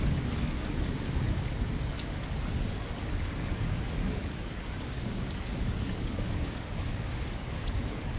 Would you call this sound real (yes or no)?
no